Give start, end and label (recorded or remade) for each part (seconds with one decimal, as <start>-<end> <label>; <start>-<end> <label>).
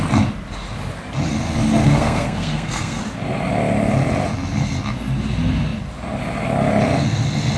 0.0-1.8 recorded; 1.8-3.0 remade; 3.0-7.6 recorded